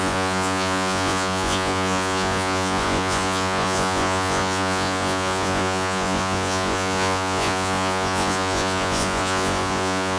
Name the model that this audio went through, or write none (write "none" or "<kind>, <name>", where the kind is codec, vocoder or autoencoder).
vocoder, Vocos